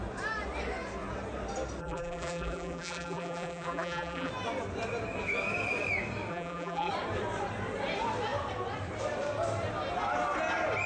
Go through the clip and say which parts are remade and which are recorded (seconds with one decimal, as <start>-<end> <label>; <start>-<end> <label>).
0.0-1.8 recorded; 1.8-4.3 remade; 4.3-6.3 recorded; 6.3-6.9 remade; 6.9-10.9 recorded